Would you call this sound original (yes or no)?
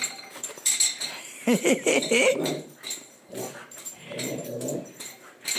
no